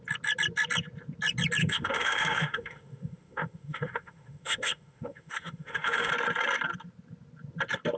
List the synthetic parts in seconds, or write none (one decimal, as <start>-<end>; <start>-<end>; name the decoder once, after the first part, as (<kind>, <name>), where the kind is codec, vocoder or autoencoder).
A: 1.6-6.1 (autoencoder, DAC-VAE)